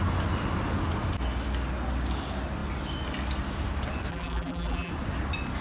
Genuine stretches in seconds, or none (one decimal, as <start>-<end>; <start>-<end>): 0.0-4.1; 4.9-5.6